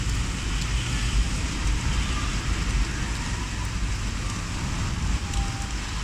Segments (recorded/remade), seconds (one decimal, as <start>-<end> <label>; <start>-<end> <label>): 0.0-6.0 recorded